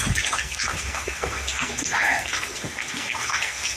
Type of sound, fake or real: fake